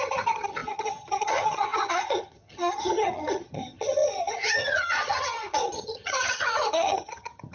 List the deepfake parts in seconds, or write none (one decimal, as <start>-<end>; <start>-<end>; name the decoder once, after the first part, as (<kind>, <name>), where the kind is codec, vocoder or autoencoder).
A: 0.0-7.5 (vocoder, HiFi-GAN)